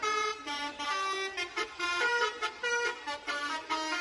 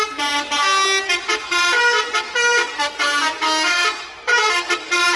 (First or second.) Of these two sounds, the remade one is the first